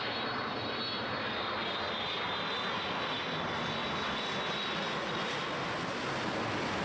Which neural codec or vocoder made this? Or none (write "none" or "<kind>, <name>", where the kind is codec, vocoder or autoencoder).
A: none